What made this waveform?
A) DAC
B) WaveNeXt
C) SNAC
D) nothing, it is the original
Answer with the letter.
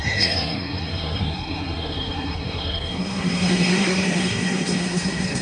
C